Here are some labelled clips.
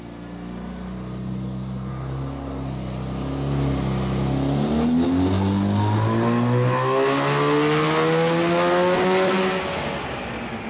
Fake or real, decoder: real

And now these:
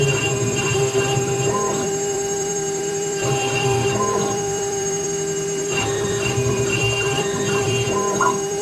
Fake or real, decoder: fake, vocoder, BigVGAN v2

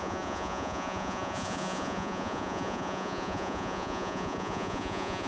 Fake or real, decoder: fake, vocoder, Vocos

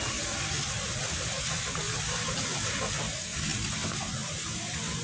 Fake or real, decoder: real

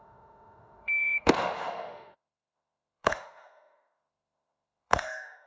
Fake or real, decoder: fake, autoencoder, DAC-VAE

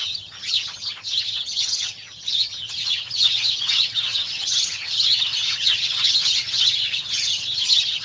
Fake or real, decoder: fake, vocoder, HiFi-GAN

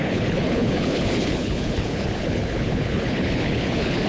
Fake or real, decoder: fake, codec, HILCodec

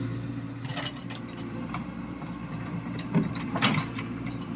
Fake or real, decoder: fake, vocoder, BigVGAN v2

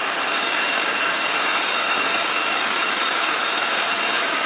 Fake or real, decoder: fake, codec, DAC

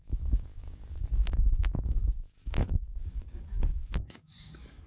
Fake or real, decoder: fake, codec, DAC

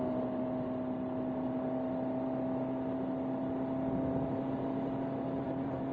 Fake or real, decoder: real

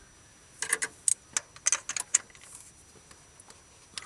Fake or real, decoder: real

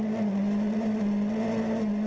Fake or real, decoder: real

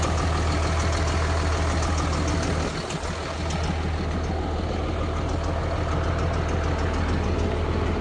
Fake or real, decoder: real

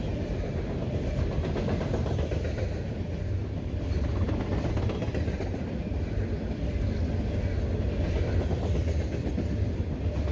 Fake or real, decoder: real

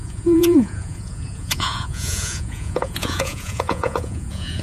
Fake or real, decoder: fake, vocoder, Vocos